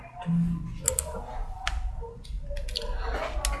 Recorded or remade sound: recorded